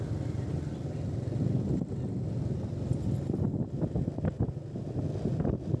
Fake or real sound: real